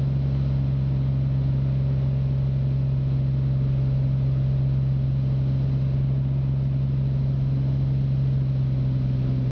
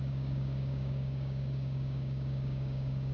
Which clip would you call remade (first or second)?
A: second